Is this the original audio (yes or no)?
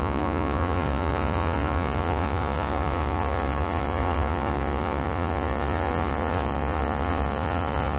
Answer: no